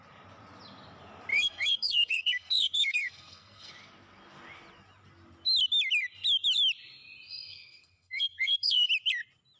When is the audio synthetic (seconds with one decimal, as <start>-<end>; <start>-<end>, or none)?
1.3-3.7; 7.3-8.9